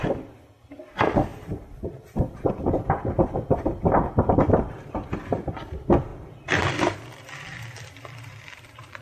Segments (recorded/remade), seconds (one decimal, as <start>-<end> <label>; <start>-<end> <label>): 0.0-6.1 remade; 6.1-6.7 recorded; 6.7-9.0 remade